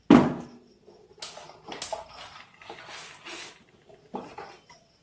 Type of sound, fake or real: real